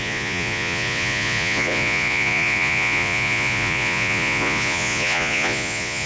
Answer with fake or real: fake